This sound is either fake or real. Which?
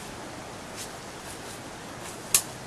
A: real